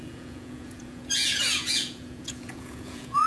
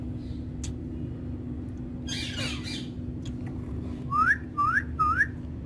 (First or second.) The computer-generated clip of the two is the first